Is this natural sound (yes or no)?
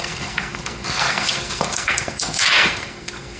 no